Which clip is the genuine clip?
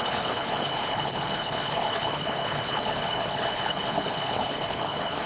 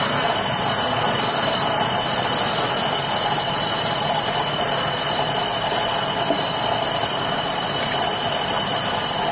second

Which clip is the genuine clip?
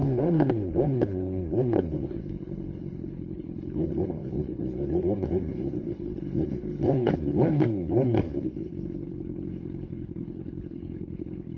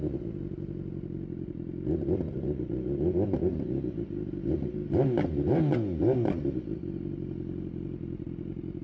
second